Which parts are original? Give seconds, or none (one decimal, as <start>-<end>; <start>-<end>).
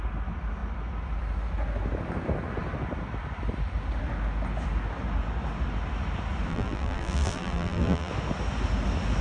0.0-6.5; 8.1-9.2